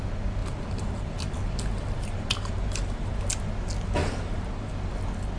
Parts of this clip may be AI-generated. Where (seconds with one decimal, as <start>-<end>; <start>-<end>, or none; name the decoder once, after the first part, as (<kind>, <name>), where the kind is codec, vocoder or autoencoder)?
0.4-3.2 (vocoder, BigVGAN v2); 4.0-4.7